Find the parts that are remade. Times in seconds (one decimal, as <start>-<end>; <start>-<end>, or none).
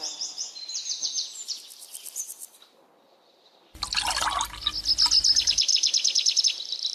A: none